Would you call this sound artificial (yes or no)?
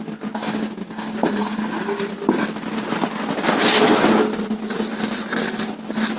no